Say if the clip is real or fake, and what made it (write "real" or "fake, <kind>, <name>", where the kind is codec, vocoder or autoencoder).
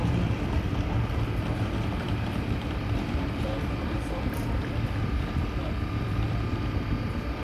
fake, vocoder, BigVGAN v2